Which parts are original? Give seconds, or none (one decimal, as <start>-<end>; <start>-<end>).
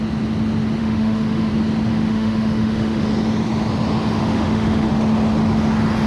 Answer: 0.0-0.8; 1.5-1.9; 3.1-4.2; 4.9-6.1